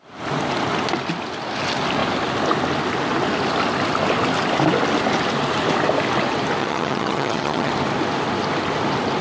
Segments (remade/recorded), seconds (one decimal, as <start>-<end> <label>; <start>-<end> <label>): 0.0-6.6 recorded; 6.6-7.7 remade; 7.7-9.2 recorded